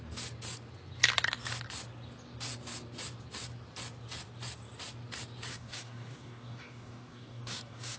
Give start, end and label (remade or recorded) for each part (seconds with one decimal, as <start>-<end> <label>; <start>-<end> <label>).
0.0-5.5 recorded; 5.5-8.0 remade